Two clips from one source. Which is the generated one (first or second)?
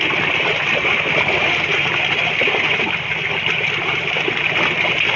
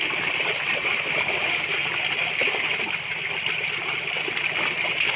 second